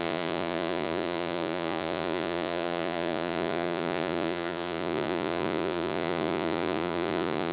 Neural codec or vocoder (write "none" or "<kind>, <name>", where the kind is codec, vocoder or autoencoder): vocoder, Vocos